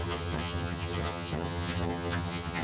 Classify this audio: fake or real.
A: fake